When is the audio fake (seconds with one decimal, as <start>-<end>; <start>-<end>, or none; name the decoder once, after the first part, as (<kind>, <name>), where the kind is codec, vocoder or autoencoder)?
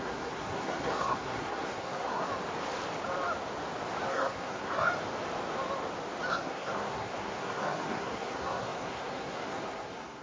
0.0-2.3 (codec, SNAC); 4.1-4.9; 6.3-10.2